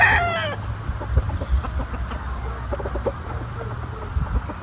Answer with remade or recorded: recorded